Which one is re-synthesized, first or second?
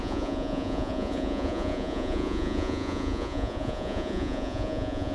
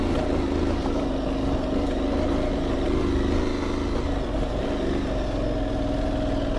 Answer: first